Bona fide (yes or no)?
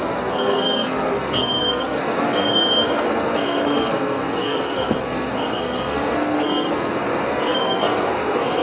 no